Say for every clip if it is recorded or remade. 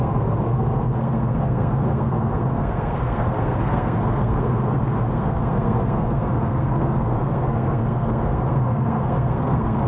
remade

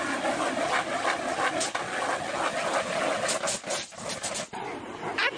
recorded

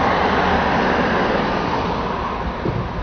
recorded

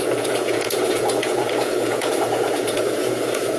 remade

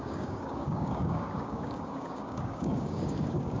remade